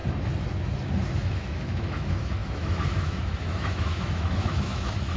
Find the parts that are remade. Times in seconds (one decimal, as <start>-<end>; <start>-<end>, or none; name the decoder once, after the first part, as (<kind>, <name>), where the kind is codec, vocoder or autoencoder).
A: 1.0-5.2 (autoencoder, DAC-VAE)